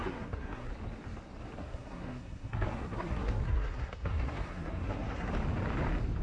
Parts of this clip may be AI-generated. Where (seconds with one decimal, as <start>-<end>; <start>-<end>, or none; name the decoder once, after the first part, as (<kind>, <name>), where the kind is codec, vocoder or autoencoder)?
0.0-0.7 (codec, SNAC); 1.6-5.3